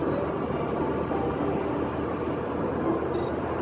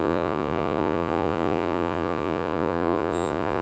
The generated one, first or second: second